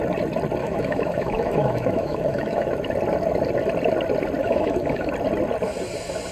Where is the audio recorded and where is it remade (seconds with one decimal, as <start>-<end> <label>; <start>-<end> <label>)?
0.0-0.6 recorded; 0.6-2.7 remade; 2.7-4.4 recorded; 4.4-5.1 remade; 5.1-6.3 recorded